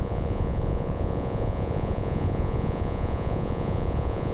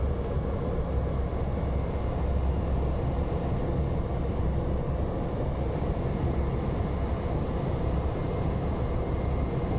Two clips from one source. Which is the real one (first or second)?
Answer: second